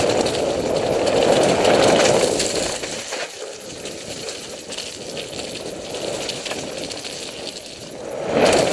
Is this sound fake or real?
real